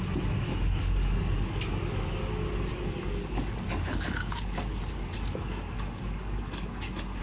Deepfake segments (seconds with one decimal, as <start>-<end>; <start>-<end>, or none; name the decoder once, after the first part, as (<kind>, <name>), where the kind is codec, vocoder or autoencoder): 0.5-2.2 (codec, DAC); 2.7-7.2